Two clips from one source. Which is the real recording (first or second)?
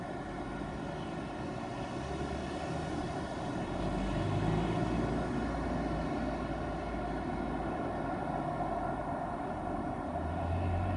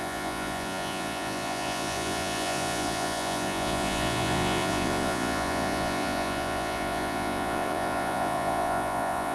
first